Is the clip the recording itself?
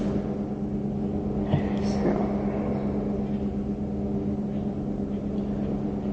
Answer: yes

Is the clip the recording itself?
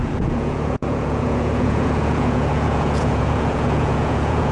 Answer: no